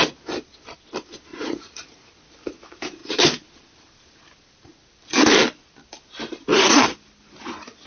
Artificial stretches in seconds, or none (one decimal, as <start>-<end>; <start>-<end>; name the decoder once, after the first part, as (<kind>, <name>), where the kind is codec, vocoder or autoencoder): 1.3-2.1 (vocoder, Vocos)